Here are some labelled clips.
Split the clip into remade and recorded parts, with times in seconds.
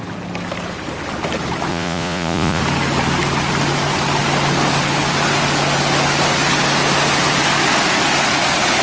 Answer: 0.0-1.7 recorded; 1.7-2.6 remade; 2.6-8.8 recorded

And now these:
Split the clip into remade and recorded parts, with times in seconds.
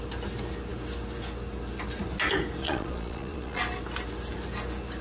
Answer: 0.0-2.6 recorded; 2.6-3.6 remade; 3.6-5.0 recorded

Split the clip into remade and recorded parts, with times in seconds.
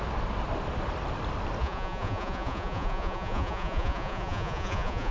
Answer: 0.0-1.6 recorded; 1.6-5.1 remade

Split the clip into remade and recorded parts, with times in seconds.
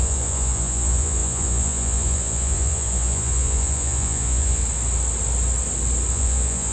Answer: 0.0-4.6 remade; 4.6-6.1 recorded; 6.1-6.7 remade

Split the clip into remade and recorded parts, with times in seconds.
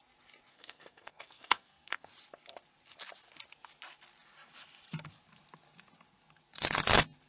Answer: 0.0-0.5 recorded; 0.5-2.1 remade; 2.1-7.3 recorded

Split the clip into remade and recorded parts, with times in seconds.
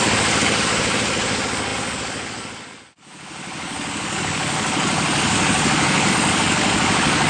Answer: 0.0-7.3 remade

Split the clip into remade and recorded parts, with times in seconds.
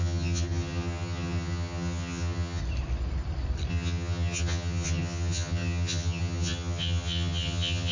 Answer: 0.0-2.6 remade; 2.6-3.7 recorded; 3.7-7.9 remade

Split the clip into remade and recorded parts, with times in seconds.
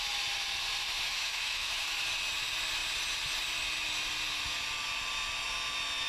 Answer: 0.0-1.1 recorded; 1.1-2.0 remade; 2.0-6.1 recorded